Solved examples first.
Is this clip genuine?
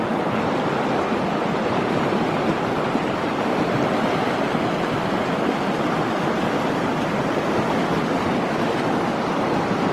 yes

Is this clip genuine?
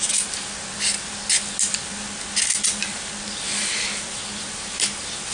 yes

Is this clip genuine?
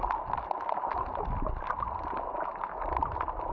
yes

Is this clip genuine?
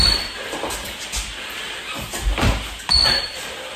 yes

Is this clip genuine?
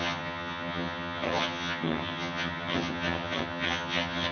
no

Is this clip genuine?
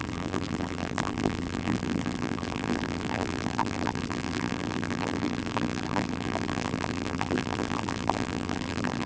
no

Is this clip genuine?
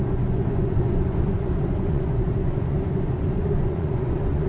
no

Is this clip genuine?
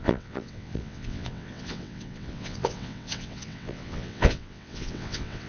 no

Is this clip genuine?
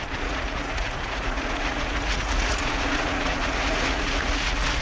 no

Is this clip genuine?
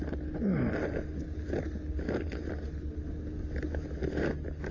yes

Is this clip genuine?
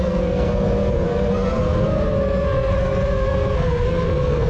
no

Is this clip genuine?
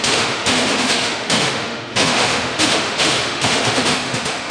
no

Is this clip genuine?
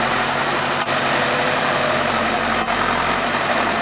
no